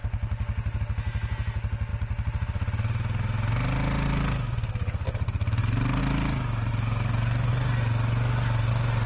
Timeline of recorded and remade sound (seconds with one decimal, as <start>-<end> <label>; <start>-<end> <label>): 0.0-9.1 recorded